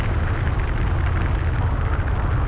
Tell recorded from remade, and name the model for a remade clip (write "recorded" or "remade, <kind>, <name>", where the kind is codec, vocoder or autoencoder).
recorded